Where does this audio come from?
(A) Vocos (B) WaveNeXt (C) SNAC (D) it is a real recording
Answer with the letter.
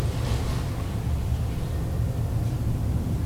D